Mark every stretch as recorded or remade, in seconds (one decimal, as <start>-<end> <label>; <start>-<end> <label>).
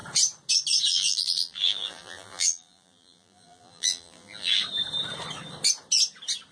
0.0-0.9 recorded; 0.9-4.6 remade; 4.6-6.5 recorded